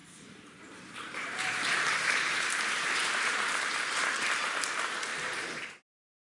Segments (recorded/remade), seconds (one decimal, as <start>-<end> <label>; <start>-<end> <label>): 0.0-3.8 remade; 3.8-5.1 recorded; 5.1-6.4 remade